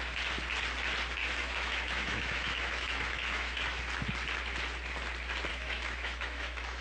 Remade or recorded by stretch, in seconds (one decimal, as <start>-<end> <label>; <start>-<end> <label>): 0.0-1.2 recorded; 1.2-3.8 remade; 3.8-5.5 recorded; 5.5-6.8 remade